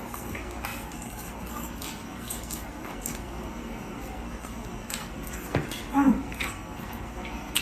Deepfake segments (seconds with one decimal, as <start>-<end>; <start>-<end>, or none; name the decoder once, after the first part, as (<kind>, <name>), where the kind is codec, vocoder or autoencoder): 0.0-7.6 (codec, SNAC)